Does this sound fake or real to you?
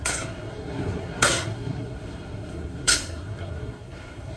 fake